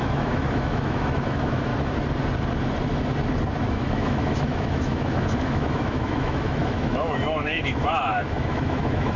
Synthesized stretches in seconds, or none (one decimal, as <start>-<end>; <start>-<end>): 0.0-1.7; 3.7-9.2